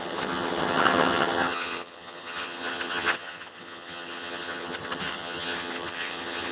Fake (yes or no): yes